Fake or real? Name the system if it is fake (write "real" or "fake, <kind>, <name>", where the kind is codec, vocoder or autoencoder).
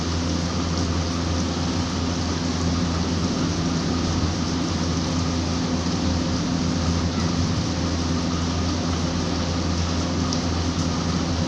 real